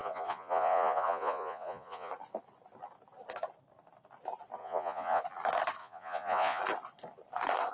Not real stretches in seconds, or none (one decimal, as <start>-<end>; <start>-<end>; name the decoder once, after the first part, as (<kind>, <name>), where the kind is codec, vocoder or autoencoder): 0.0-2.1 (vocoder, Vocos); 4.6-5.2; 5.8-6.6